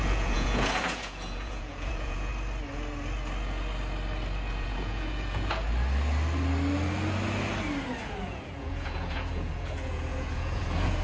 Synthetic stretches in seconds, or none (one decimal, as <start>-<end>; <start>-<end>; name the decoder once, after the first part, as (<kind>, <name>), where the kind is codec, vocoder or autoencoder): 0.0-2.3 (vocoder, Vocos); 4.5-5.7; 8.0-11.0